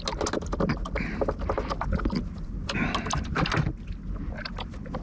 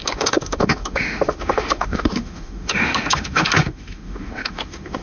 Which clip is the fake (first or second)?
second